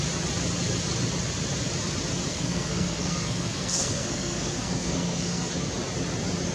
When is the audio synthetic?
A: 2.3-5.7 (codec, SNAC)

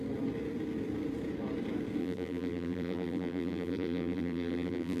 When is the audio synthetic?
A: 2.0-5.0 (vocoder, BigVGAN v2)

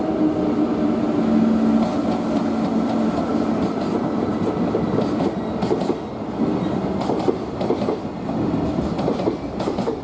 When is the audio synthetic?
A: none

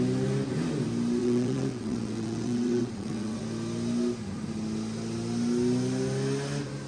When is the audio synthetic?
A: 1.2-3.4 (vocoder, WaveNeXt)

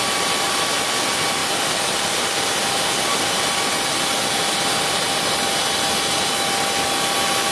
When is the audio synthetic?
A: none

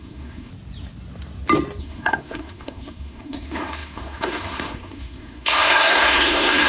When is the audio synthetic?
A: 0.0-0.5 (codec, SNAC); 1.8-6.7

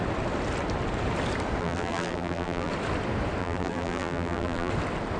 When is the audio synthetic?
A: 1.6-2.7 (vocoder, BigVGAN v2); 3.4-4.7

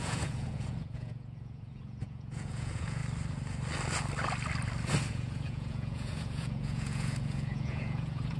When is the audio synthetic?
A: 0.0-3.0 (vocoder, Vocos); 5.1-8.4